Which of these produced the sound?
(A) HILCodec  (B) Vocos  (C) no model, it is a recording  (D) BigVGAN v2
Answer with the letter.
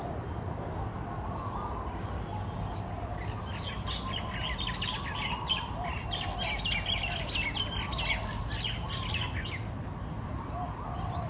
C